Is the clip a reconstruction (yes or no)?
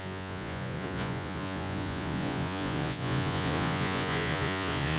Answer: yes